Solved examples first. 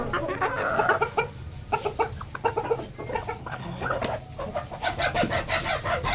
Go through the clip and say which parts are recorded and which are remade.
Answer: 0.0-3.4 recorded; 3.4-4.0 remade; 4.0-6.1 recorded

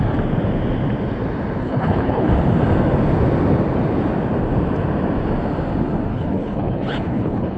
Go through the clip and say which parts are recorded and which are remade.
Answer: 0.0-1.6 recorded; 1.6-2.3 remade; 2.3-6.1 recorded; 6.1-7.6 remade

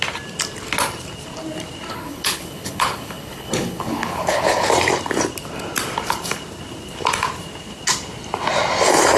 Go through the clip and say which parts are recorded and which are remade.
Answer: 0.0-1.9 recorded; 1.9-4.7 remade; 4.7-9.2 recorded